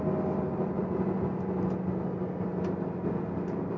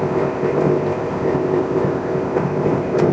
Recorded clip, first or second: first